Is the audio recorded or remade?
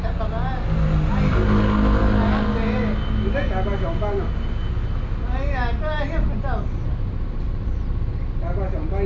recorded